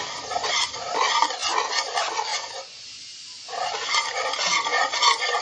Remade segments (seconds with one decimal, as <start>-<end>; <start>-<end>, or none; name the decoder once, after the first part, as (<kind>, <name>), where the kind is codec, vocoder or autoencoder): none